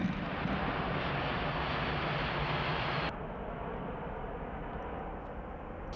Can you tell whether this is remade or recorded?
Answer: recorded